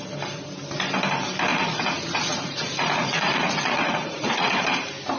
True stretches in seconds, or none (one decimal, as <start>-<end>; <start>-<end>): 0.0-1.5; 4.6-5.2